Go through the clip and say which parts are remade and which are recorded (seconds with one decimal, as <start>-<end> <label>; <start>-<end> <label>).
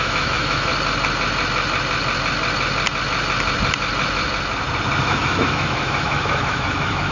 0.0-0.7 remade; 0.7-5.0 recorded; 5.0-7.1 remade